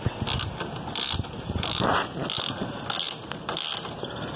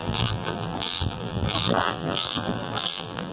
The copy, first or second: second